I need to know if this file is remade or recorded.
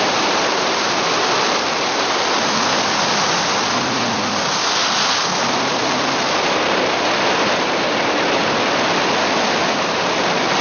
recorded